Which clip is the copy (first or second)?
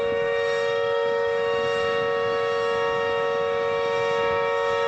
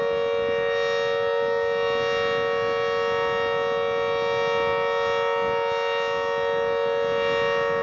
first